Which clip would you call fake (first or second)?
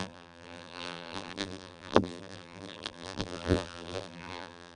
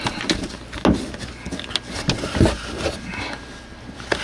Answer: first